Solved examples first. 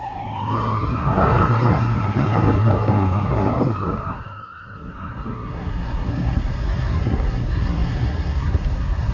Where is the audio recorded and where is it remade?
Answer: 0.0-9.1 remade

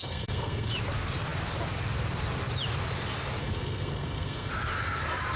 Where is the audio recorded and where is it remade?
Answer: 0.0-0.7 remade; 0.7-3.4 recorded; 3.4-4.5 remade; 4.5-5.4 recorded

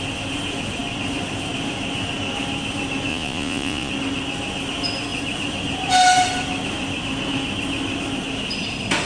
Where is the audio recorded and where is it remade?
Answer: 0.0-3.1 recorded; 3.1-3.9 remade; 3.9-9.1 recorded

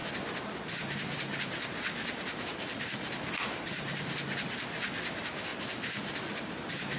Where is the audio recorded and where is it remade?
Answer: 0.0-7.0 recorded

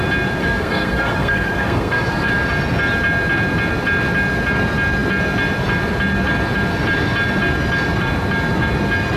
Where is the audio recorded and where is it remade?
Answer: 0.0-0.4 recorded; 0.4-2.3 remade; 2.3-9.2 recorded

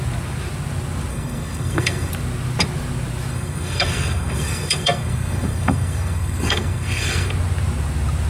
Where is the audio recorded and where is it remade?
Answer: 0.0-1.1 recorded; 1.1-2.1 remade; 2.1-3.3 recorded; 3.3-7.3 remade; 7.3-8.3 recorded